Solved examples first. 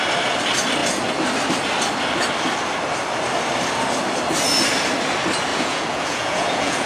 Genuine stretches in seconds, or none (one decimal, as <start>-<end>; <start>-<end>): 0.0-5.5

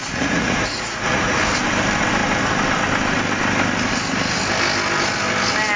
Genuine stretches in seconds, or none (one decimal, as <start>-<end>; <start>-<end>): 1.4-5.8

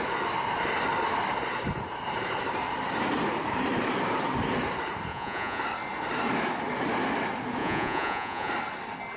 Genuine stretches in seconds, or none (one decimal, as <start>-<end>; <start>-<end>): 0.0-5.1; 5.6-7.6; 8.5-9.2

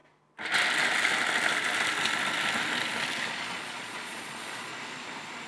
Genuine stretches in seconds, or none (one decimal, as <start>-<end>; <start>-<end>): 0.0-3.3; 4.7-5.5

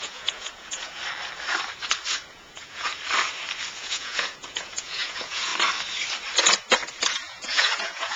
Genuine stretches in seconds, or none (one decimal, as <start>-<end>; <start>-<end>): 1.0-2.3; 2.9-3.8; 5.5-7.1

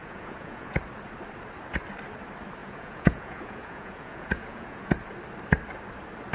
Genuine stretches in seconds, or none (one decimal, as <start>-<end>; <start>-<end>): 0.8-2.6; 4.9-6.3

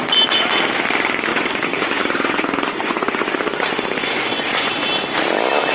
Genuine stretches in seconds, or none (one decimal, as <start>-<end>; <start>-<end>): 0.0-1.3; 4.7-5.7

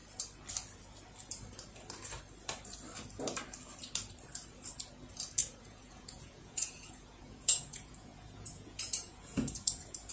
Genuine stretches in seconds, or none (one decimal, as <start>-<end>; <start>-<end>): 0.0-5.4